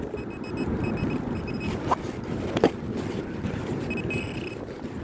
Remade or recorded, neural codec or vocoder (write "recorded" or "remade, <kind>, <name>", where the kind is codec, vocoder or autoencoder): recorded